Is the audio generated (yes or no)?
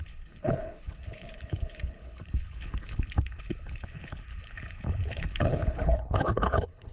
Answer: yes